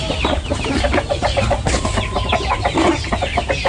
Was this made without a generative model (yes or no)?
yes